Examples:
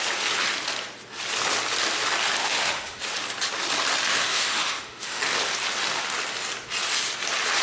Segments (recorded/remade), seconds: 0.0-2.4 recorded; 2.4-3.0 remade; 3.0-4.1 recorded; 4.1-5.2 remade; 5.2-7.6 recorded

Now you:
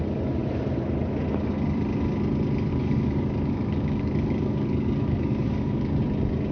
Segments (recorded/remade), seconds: 0.0-2.7 recorded; 2.7-6.0 remade; 6.0-6.5 recorded

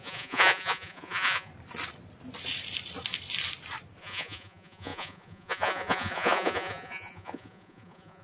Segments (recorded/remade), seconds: 0.0-1.5 remade; 1.5-4.0 recorded; 4.0-8.2 remade

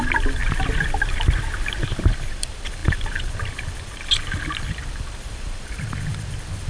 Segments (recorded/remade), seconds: 0.0-0.4 remade; 0.4-2.1 recorded; 2.1-6.7 remade

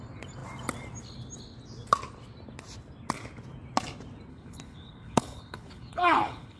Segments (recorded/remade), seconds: 0.0-4.3 recorded; 4.3-6.6 remade

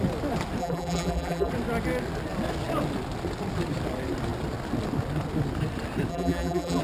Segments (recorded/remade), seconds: 0.0-0.6 recorded; 0.6-1.5 remade; 1.5-6.1 recorded; 6.1-6.8 remade

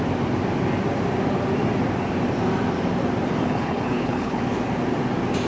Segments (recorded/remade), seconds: 0.0-3.4 recorded; 3.4-4.4 remade; 4.4-5.5 recorded

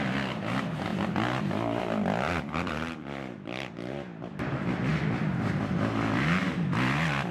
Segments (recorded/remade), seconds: 0.0-7.3 recorded